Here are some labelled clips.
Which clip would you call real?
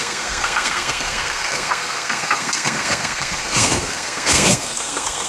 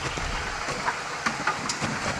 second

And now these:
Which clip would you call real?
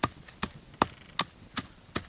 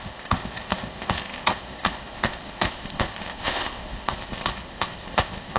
first